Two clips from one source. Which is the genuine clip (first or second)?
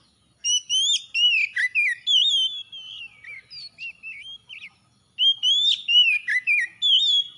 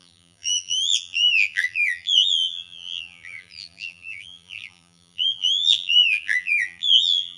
first